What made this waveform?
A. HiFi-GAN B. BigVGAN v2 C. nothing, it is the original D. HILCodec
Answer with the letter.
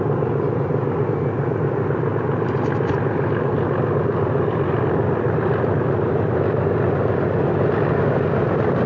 C